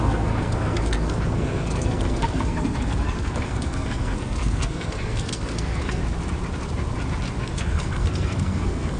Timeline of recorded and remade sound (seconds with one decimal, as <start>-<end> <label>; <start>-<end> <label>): 0.0-6.0 remade; 6.0-7.4 recorded; 7.4-9.0 remade